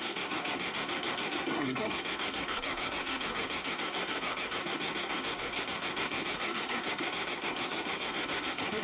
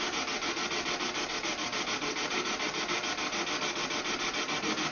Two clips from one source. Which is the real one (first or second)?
second